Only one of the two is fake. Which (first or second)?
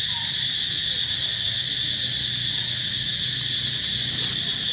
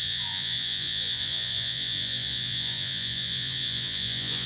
second